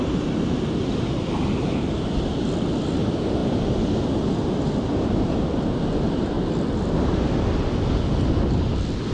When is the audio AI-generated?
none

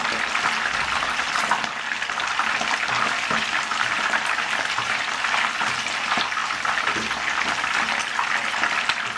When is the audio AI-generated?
3.7-5.0 (vocoder, BigVGAN v2)

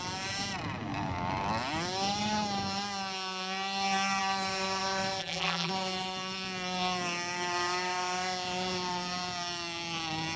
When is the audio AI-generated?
5.2-5.7 (vocoder, BigVGAN v2)

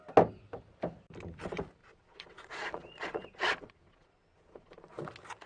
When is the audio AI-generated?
1.8-5.1 (vocoder, Vocos)

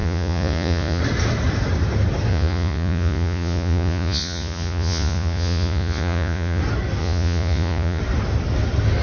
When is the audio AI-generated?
0.0-1.0 (vocoder, Vocos); 2.3-6.6; 7.0-8.0

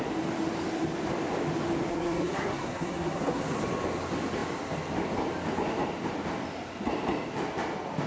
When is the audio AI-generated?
1.9-3.4 (codec, SNAC)

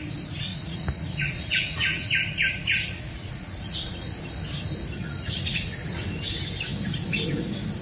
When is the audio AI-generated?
0.5-4.2 (vocoder, Vocos); 5.0-6.0

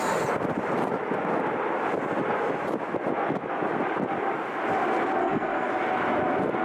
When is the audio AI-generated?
5.2-5.7 (codec, SNAC)